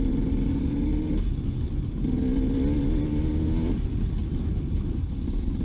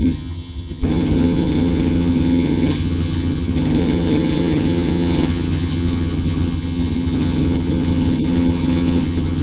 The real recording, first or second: first